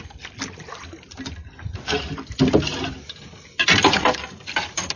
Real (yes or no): yes